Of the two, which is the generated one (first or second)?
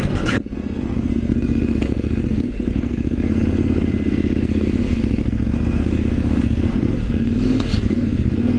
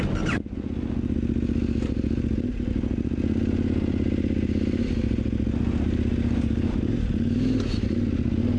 first